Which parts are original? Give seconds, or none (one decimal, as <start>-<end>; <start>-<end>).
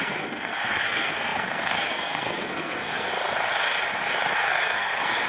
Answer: 3.1-4.3